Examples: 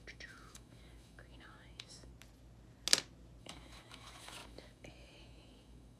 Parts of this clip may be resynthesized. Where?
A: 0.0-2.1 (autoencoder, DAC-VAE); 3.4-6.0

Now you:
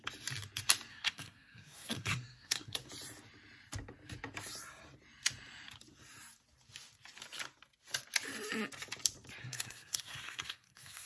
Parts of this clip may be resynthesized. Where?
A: 0.9-2.9 (codec, SNAC); 9.4-11.1

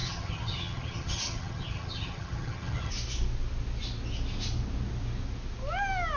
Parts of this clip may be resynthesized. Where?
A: 0.0-2.9 (vocoder, HiFi-GAN)

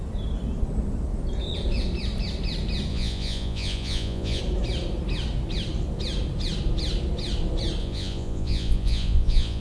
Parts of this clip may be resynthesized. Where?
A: 2.9-4.4 (vocoder, Vocos); 7.8-9.6

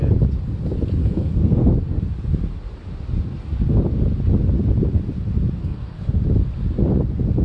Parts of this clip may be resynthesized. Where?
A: 1.0-2.0 (codec, SNAC); 5.6-6.2

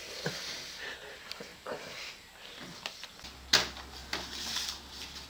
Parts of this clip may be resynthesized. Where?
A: none